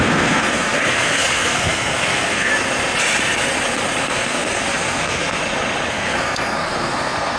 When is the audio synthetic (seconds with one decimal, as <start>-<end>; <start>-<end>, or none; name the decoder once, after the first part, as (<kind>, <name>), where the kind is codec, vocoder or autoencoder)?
0.0-2.5 (codec, SNAC); 4.0-5.4; 5.9-7.4